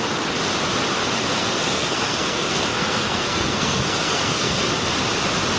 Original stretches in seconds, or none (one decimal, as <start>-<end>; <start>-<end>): 0.0-1.3; 4.7-5.6